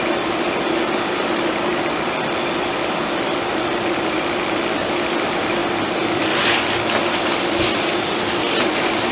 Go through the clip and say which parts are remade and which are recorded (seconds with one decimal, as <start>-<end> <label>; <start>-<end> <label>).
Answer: 0.0-9.1 remade